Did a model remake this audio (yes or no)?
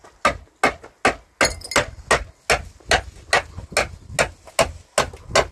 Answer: no